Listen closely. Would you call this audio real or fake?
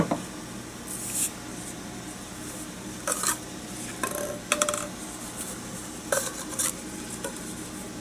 real